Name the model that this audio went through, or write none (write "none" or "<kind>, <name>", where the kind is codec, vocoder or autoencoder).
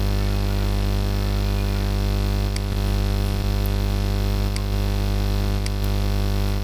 none